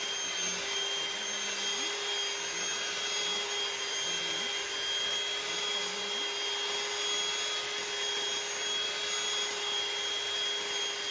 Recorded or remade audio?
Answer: recorded